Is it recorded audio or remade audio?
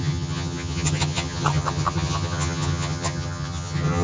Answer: remade